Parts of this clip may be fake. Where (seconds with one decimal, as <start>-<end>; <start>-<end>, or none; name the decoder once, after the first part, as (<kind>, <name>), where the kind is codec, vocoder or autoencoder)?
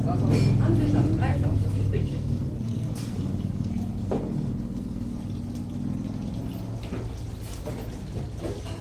1.3-5.1 (codec, SNAC)